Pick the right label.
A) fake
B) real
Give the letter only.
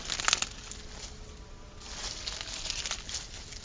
B